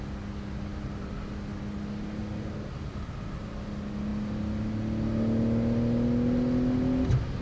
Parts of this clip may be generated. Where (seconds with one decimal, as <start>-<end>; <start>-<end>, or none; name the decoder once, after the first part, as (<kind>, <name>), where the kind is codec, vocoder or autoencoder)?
none